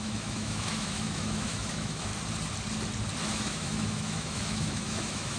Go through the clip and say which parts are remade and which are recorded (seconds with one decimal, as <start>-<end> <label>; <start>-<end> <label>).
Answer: 0.0-2.1 remade; 2.1-3.2 recorded; 3.2-5.4 remade